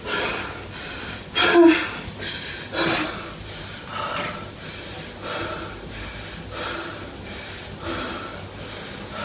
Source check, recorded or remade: recorded